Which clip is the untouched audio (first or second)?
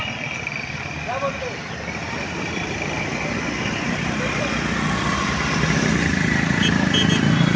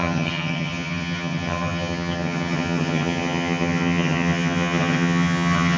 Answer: first